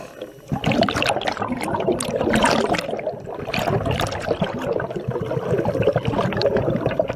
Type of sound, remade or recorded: recorded